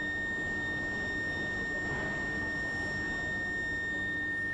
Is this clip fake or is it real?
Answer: real